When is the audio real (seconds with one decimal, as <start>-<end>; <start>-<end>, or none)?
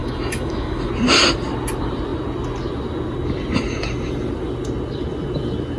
0.9-5.8